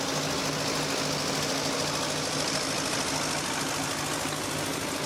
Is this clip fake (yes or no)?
no